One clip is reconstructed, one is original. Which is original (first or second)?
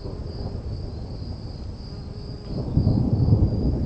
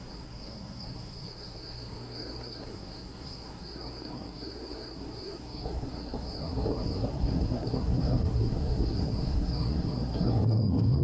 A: first